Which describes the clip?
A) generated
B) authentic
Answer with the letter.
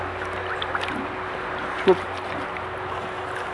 B